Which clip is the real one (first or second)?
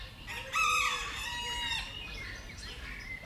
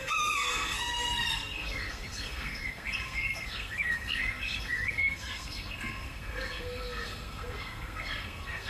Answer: first